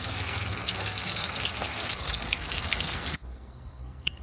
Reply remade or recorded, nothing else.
remade